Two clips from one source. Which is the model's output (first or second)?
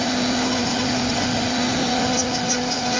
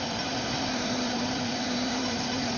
second